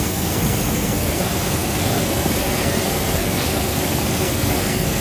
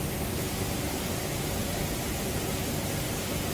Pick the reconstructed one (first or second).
first